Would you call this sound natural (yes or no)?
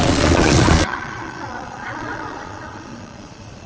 no